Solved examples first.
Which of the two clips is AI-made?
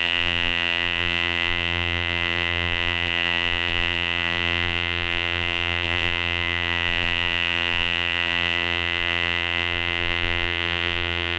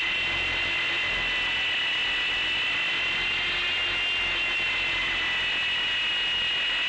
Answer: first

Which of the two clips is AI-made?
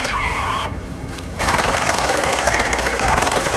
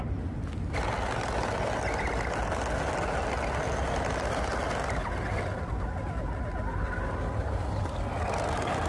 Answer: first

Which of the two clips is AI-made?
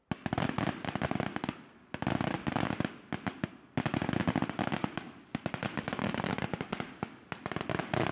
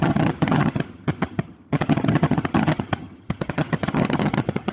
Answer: second